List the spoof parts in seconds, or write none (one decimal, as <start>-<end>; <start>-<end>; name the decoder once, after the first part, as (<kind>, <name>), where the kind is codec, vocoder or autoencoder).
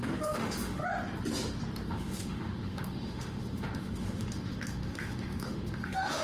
0.0-0.8 (autoencoder, DAC-VAE); 1.9-6.2